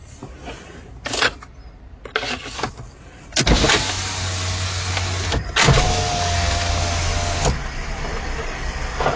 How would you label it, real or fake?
real